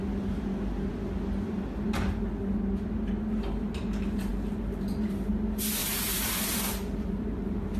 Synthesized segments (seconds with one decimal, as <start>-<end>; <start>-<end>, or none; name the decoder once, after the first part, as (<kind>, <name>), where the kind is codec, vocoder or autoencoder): 5.8-7.1 (vocoder, BigVGAN v2)